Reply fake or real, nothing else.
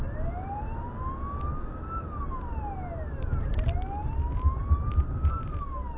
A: real